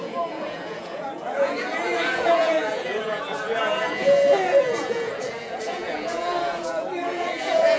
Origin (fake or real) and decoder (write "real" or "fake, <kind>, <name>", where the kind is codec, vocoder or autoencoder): fake, vocoder, Vocos